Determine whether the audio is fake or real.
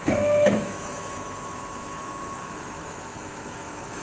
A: fake